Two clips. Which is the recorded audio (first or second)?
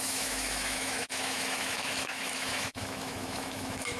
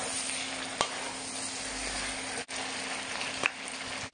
second